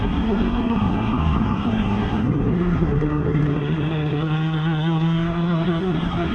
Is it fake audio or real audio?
fake